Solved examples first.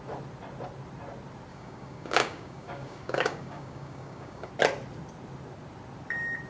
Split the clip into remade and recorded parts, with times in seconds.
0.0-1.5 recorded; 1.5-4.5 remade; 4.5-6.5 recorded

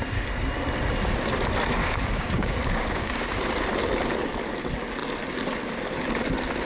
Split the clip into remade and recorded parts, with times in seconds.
0.0-1.8 recorded; 1.8-3.5 remade; 3.5-6.6 recorded

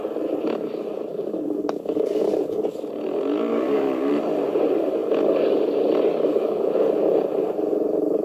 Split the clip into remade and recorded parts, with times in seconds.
0.0-1.1 recorded; 1.1-2.8 remade; 2.8-3.5 recorded; 3.5-4.1 remade; 4.1-6.1 recorded; 6.1-6.6 remade; 6.6-8.2 recorded

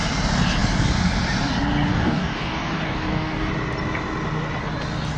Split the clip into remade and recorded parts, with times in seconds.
0.0-1.9 recorded; 1.9-3.5 remade; 3.5-5.2 recorded